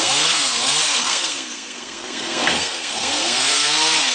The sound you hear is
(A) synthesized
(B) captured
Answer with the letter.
A